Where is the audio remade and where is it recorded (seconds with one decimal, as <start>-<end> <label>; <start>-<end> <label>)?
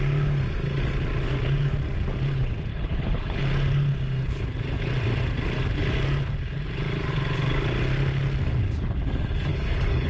0.0-2.7 recorded; 2.7-3.4 remade; 3.4-9.5 recorded; 9.5-10.1 remade